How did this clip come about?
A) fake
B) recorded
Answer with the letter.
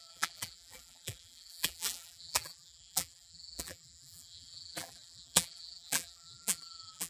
A